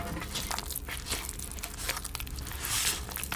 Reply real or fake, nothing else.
real